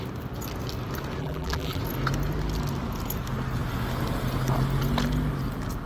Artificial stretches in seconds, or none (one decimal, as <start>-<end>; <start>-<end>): 1.2-1.8